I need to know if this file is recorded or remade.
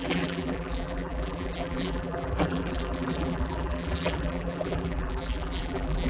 remade